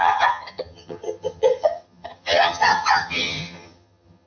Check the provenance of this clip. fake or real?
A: fake